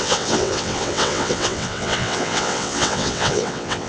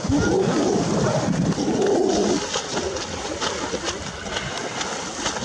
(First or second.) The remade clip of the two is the first